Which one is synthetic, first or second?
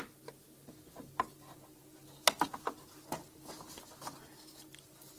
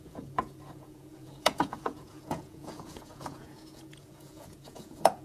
second